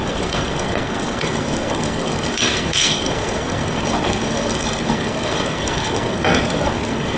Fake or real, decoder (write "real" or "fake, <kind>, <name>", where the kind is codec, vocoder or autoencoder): fake, codec, SNAC